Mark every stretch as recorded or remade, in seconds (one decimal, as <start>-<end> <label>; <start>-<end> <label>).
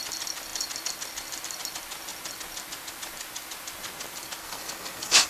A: 0.0-4.4 recorded; 4.4-5.3 remade